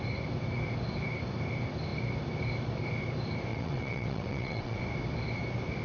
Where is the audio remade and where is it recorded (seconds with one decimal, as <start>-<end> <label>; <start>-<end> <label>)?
0.0-3.5 recorded; 3.5-4.8 remade; 4.8-5.8 recorded